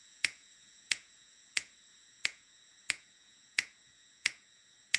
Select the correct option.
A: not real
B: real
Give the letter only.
A